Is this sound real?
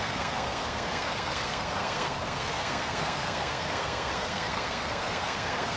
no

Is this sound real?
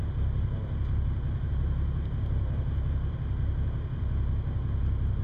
yes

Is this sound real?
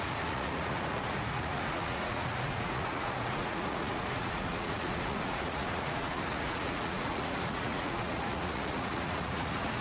no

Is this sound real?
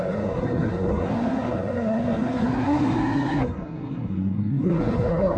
no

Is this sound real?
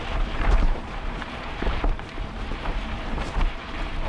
no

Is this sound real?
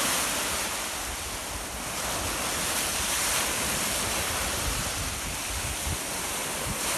yes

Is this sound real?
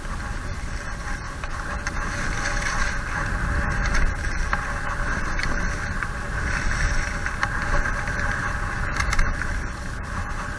yes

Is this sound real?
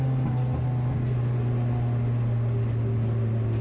yes